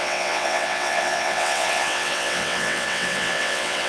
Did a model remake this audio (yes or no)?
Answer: yes